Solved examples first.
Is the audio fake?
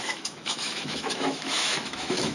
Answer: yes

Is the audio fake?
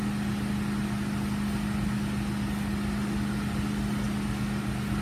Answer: no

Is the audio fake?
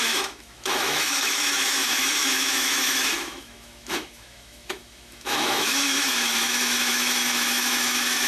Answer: yes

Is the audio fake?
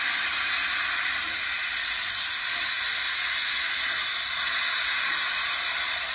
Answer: no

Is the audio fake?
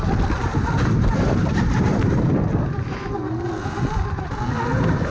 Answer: no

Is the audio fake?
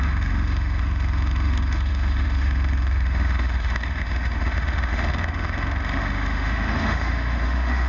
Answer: yes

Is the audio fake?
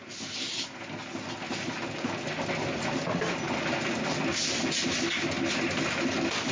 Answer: no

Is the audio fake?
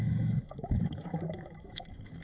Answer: yes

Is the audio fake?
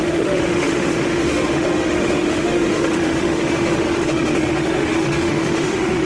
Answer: yes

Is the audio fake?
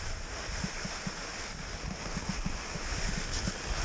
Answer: no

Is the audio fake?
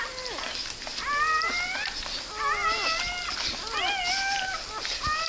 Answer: no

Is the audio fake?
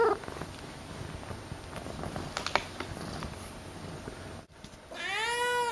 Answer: no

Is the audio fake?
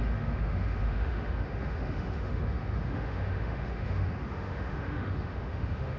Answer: yes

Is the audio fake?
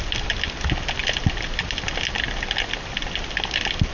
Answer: no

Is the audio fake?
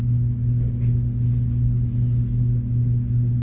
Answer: no